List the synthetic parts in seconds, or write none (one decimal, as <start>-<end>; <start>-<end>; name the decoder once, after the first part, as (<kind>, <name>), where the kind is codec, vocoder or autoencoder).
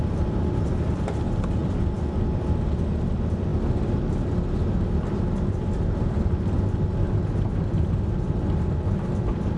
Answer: none